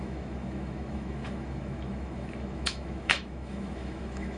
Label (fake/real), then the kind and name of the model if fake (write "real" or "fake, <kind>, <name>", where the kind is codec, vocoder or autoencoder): fake, autoencoder, DAC-VAE